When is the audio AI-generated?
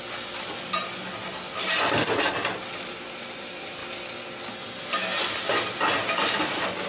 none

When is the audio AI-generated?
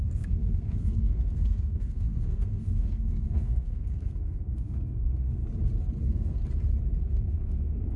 0.0-5.4 (codec, SNAC); 6.0-6.4; 7.1-8.0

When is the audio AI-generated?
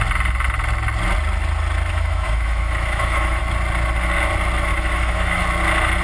1.9-3.4 (autoencoder, DAC-VAE); 4.7-5.4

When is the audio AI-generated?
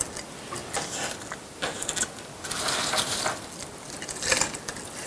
none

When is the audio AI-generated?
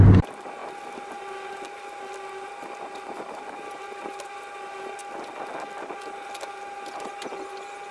0.6-3.8 (vocoder, BigVGAN v2)